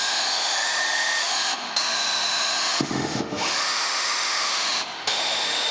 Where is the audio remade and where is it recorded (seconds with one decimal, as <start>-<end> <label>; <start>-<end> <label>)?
0.0-5.7 remade